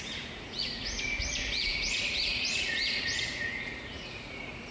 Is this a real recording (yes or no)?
no